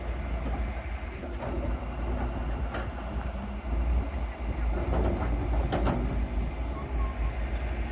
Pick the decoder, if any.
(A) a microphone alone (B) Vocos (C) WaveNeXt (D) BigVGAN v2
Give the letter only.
A